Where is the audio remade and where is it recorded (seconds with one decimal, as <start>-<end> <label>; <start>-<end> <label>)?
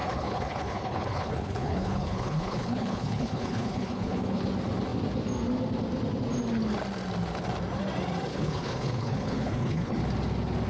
0.0-4.4 remade; 4.4-8.3 recorded; 8.3-10.0 remade; 10.0-10.7 recorded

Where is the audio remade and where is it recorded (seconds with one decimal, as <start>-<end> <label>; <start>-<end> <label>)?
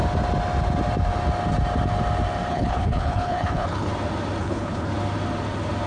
0.0-2.5 recorded; 2.5-3.9 remade; 3.9-4.4 recorded; 4.4-4.9 remade; 4.9-5.9 recorded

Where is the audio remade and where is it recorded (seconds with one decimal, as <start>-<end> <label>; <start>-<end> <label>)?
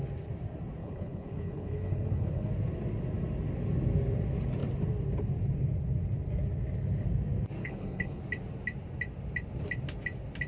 0.0-0.8 recorded; 0.8-2.5 remade; 2.5-7.6 recorded; 7.6-8.2 remade; 8.2-10.5 recorded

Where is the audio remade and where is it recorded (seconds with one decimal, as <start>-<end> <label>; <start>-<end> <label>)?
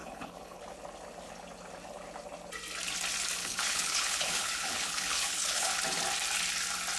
0.0-0.6 remade; 0.6-3.4 recorded; 3.4-5.8 remade; 5.8-7.0 recorded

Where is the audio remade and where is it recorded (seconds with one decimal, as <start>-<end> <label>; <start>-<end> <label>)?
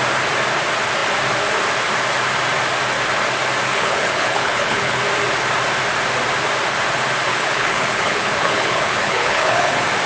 0.0-3.7 recorded; 3.7-5.0 remade; 5.0-7.3 recorded; 7.3-9.7 remade; 9.7-10.1 recorded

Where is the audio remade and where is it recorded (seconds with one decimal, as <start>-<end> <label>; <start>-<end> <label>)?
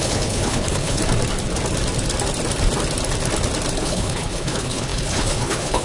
0.0-1.0 remade; 1.0-3.8 recorded; 3.8-5.8 remade